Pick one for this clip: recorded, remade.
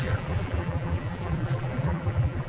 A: remade